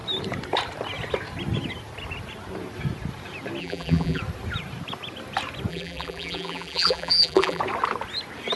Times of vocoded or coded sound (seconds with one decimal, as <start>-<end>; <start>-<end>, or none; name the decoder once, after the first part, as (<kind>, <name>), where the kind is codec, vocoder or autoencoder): 3.6-4.2 (vocoder, BigVGAN v2); 5.7-7.6